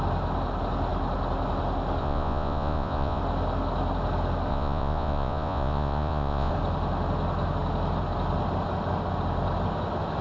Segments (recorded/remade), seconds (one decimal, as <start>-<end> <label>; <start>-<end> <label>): 0.0-2.0 recorded; 2.0-3.2 remade; 3.2-4.5 recorded; 4.5-6.5 remade; 6.5-10.2 recorded